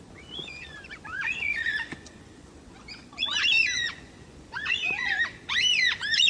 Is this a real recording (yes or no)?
no